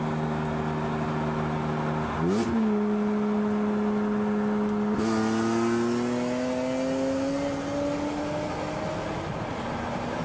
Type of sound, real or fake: real